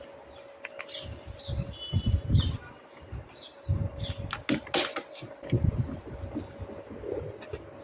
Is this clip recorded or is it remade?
recorded